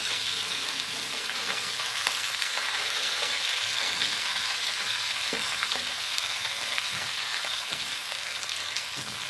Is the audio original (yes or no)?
no